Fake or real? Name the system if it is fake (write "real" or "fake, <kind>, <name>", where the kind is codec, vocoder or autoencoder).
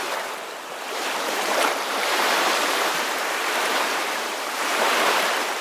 fake, vocoder, BigVGAN v2